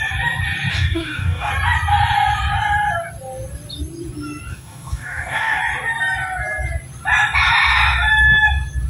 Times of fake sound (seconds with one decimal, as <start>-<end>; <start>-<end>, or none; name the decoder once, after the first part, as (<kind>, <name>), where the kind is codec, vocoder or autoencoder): 0.7-1.5 (codec, DAC); 4.5-5.6